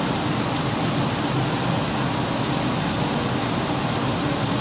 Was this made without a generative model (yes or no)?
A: yes